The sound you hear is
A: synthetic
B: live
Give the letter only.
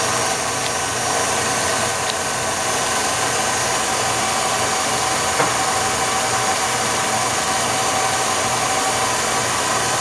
B